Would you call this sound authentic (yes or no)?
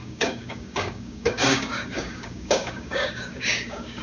no